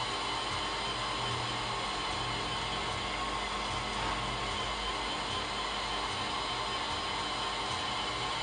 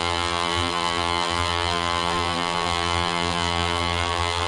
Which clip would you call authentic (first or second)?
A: first